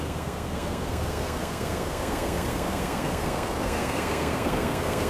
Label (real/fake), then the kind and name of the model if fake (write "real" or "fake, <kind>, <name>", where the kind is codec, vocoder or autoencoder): fake, codec, SNAC